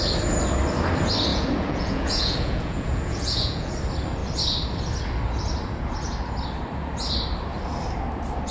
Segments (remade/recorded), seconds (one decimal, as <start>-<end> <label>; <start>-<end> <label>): 0.0-1.3 recorded; 1.3-3.7 remade; 3.7-8.5 recorded